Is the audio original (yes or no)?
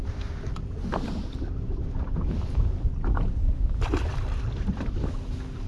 yes